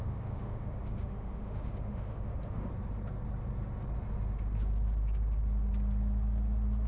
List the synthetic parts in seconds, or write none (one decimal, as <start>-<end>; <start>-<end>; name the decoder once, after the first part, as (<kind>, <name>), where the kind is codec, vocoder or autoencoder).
0.0-2.7 (autoencoder, DAC-VAE)